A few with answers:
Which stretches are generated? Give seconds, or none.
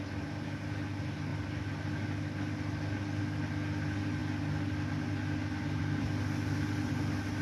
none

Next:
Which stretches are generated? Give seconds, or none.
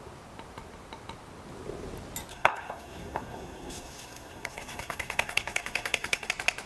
2.3-6.3 (codec, SNAC)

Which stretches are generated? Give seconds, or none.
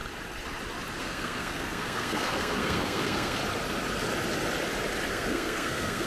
1.0-3.4 (codec, SNAC); 5.1-6.1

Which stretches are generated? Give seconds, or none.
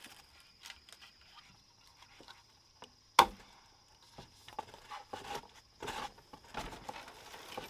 none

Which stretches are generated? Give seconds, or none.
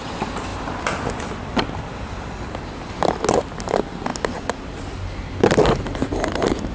none